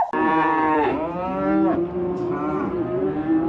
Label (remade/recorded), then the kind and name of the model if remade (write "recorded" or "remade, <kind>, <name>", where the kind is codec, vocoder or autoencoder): remade, vocoder, BigVGAN v2